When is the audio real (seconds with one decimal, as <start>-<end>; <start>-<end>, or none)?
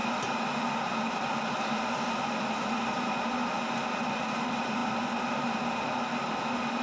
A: 0.0-6.8